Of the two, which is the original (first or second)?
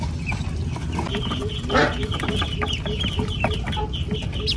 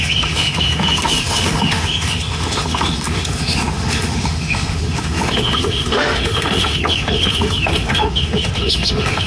first